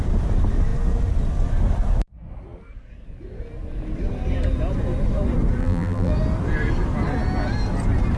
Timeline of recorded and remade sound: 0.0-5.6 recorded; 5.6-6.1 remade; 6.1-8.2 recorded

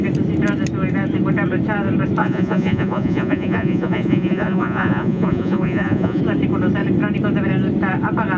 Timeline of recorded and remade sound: 0.0-2.2 recorded; 2.2-6.2 remade; 6.2-8.4 recorded

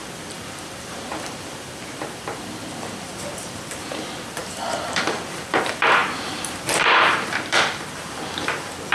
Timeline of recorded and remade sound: 0.0-6.0 remade; 6.0-6.8 recorded; 6.8-8.9 remade

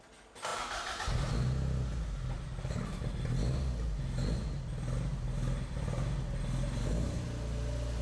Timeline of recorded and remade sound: 0.0-0.5 recorded; 0.5-1.3 remade; 1.3-8.0 recorded

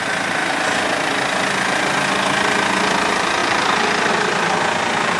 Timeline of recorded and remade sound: 0.0-3.4 recorded; 3.4-4.1 remade; 4.1-5.2 recorded

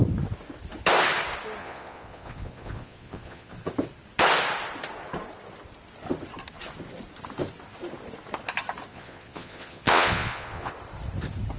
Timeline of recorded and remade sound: 0.0-1.6 recorded; 1.6-3.5 remade; 3.5-8.9 recorded; 8.9-10.7 remade; 10.7-11.6 recorded